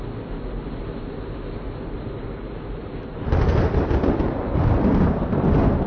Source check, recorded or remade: recorded